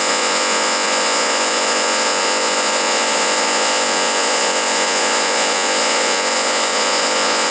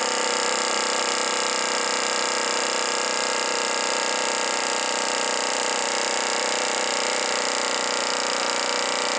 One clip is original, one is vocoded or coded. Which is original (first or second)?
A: second